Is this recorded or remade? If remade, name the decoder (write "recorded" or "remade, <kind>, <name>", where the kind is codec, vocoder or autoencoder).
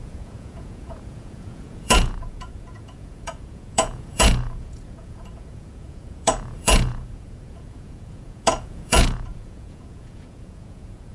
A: remade, vocoder, Vocos